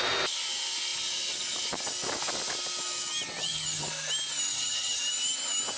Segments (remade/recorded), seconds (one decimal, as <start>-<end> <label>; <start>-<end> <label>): 0.0-3.4 recorded; 3.4-3.9 remade; 3.9-4.5 recorded; 4.5-5.0 remade; 5.0-5.8 recorded